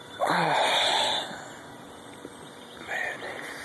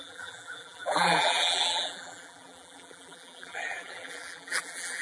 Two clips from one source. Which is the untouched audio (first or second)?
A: first